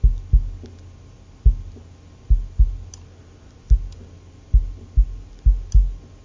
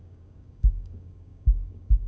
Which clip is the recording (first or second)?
first